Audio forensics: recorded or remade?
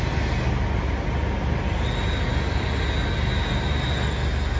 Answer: recorded